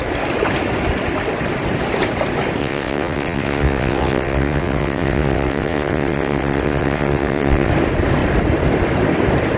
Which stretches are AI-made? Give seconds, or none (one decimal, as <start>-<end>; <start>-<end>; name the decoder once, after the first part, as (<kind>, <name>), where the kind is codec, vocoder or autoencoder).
2.6-7.7 (vocoder, WaveNeXt)